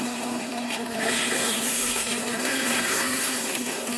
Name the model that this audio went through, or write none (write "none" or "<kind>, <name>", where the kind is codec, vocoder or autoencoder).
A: codec, SNAC